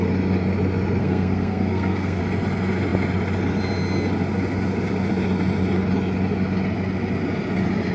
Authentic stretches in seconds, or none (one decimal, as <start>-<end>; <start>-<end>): 0.0-1.0; 2.2-7.9